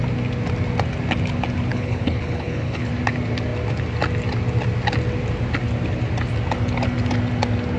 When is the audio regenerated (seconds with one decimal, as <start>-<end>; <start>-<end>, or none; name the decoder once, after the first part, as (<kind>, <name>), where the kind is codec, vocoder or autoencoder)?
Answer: 1.7-2.9 (codec, HILCodec)